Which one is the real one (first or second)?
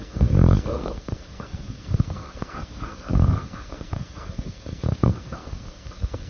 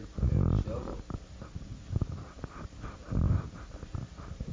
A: second